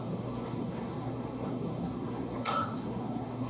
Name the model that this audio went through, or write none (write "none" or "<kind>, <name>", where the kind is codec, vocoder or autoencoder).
codec, SNAC